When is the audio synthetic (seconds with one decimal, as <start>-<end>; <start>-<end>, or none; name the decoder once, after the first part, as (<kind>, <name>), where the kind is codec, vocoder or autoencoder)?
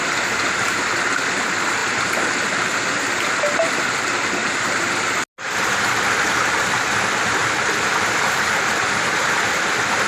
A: 4.4-4.9 (vocoder, BigVGAN v2); 7.4-8.5